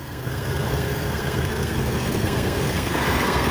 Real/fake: fake